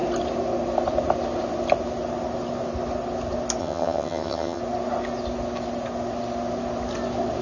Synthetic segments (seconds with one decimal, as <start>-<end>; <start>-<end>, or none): 3.6-4.6